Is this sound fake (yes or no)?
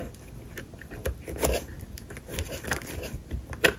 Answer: no